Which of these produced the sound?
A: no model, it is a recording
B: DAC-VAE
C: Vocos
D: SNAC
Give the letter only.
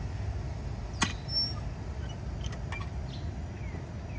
A